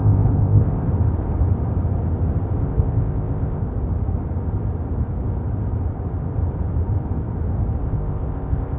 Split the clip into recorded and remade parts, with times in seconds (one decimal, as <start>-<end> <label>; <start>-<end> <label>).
0.0-0.9 remade; 0.9-2.6 recorded; 2.6-3.6 remade; 3.6-7.8 recorded; 7.8-8.8 remade